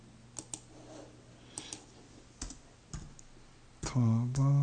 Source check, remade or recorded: recorded